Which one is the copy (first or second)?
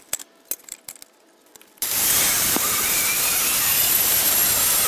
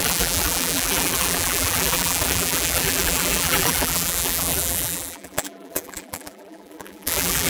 second